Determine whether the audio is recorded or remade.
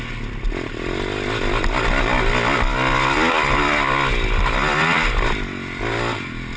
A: recorded